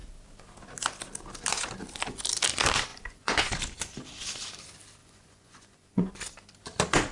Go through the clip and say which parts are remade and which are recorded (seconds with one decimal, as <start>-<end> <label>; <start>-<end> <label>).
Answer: 0.0-2.9 recorded; 2.9-3.5 remade; 3.5-5.0 recorded; 5.0-6.1 remade; 6.1-7.1 recorded